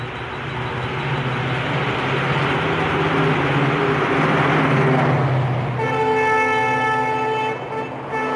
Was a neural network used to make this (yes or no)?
no